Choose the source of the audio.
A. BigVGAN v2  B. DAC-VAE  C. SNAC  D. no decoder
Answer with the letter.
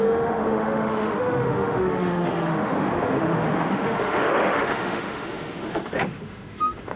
B